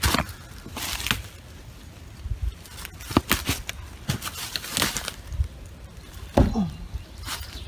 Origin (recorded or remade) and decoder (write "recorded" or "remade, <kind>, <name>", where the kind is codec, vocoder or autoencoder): recorded